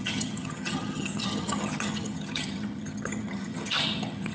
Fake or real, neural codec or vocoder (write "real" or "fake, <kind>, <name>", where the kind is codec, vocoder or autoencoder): fake, vocoder, HiFi-GAN